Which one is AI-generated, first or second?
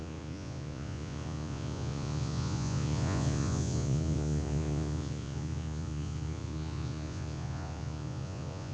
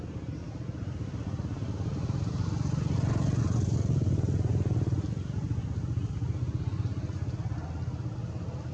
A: first